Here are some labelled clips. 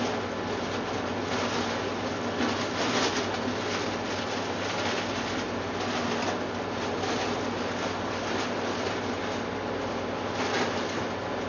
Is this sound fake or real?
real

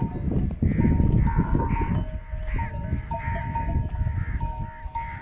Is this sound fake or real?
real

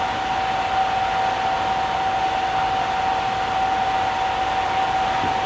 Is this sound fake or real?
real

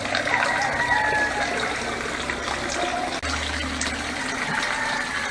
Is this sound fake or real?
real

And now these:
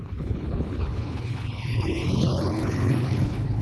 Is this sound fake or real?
fake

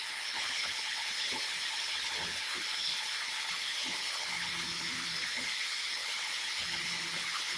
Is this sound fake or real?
fake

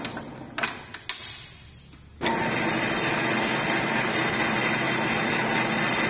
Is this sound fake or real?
real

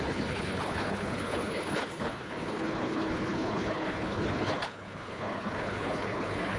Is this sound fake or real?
fake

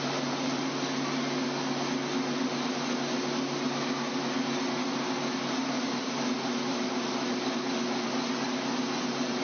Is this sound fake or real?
real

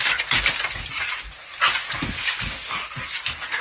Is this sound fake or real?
real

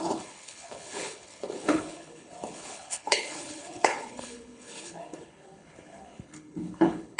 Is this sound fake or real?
fake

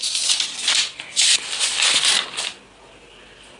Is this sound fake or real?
real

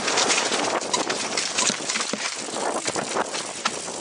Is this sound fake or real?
real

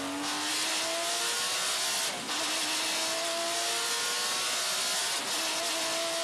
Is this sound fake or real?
real